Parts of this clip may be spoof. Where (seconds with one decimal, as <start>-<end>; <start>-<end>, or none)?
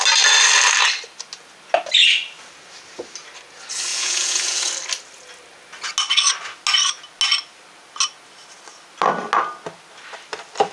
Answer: 3.9-4.7